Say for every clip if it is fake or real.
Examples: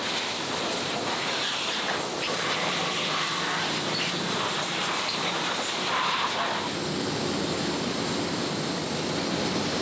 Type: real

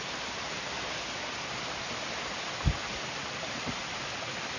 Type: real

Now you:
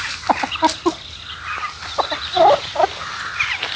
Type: real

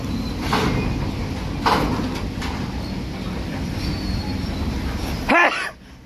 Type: real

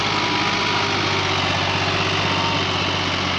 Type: real